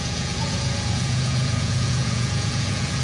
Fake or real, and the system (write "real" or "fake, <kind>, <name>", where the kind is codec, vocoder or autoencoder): fake, vocoder, Vocos